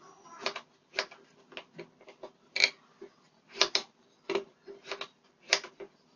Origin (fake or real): real